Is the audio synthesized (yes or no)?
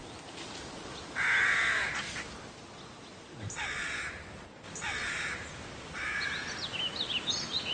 no